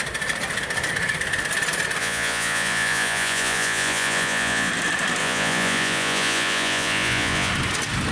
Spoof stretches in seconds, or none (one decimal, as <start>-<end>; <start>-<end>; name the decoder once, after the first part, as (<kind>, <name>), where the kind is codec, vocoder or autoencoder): 2.0-4.7 (vocoder, Vocos); 5.2-7.5